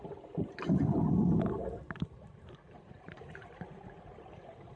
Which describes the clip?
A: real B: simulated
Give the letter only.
B